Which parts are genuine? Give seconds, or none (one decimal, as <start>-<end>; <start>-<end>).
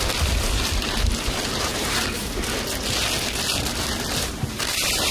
1.7-4.5